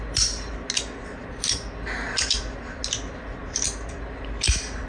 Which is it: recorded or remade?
recorded